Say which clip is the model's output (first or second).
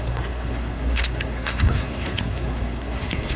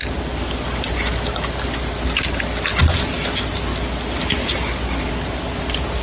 first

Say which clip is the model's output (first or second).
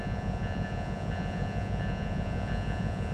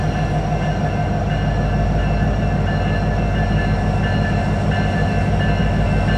first